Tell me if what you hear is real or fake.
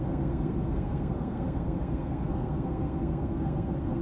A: fake